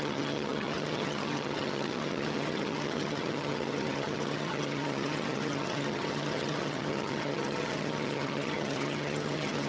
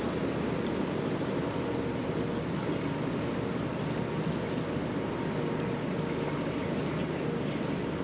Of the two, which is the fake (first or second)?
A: first